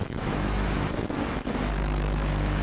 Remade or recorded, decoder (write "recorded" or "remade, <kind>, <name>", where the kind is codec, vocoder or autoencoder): remade, autoencoder, DAC-VAE